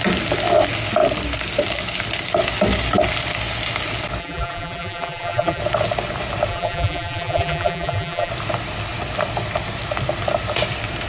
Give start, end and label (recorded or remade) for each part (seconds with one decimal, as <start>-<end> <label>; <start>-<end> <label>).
0.0-4.2 recorded; 4.2-5.6 remade; 5.6-6.5 recorded; 6.5-8.3 remade; 8.3-11.1 recorded